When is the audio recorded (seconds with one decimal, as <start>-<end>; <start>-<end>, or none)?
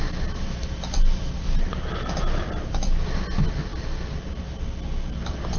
0.0-5.6